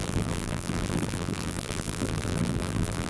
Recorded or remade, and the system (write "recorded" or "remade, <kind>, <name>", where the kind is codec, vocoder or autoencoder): remade, vocoder, BigVGAN v2